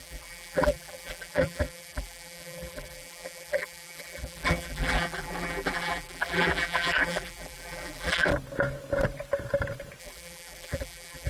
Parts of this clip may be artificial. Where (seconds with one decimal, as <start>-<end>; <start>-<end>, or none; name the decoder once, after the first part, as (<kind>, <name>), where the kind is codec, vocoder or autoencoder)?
0.0-8.3 (vocoder, BigVGAN v2); 10.0-11.3